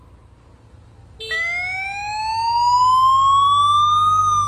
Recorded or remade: recorded